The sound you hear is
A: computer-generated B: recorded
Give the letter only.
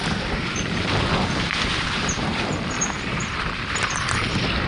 A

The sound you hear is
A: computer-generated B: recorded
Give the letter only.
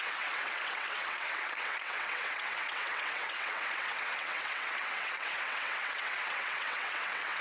A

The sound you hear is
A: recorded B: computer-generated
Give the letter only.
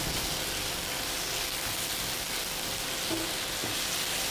A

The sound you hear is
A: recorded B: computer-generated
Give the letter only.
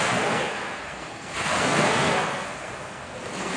B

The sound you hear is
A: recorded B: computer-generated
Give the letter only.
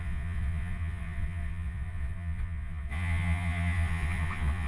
B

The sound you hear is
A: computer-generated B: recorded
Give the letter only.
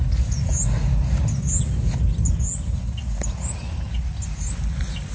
B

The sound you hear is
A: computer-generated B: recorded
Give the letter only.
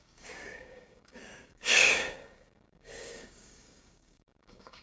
A